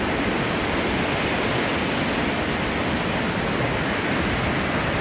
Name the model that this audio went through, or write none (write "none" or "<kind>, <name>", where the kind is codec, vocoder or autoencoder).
none